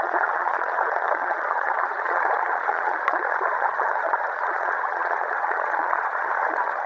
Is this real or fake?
fake